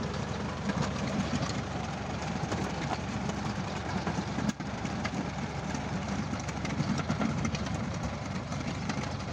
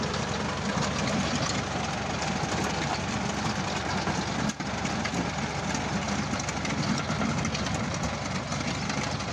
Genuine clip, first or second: second